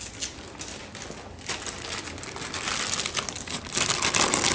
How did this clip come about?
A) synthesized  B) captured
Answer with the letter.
B